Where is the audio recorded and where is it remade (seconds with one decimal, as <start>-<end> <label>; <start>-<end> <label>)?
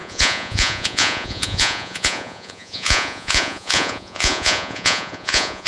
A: 0.0-5.7 remade